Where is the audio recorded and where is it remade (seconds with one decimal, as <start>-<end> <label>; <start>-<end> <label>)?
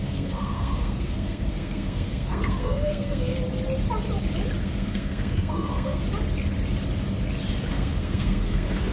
0.0-3.3 remade; 3.3-4.6 recorded; 4.6-6.0 remade; 6.0-7.7 recorded; 7.7-8.9 remade